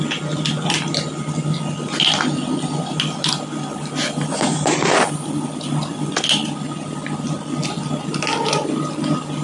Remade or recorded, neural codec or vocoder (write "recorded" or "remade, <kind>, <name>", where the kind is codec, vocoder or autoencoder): recorded